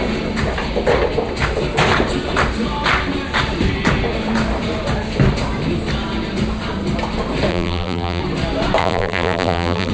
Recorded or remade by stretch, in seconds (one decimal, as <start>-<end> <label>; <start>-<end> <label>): 0.0-7.5 recorded; 7.5-8.2 remade; 8.2-8.8 recorded; 8.8-9.9 remade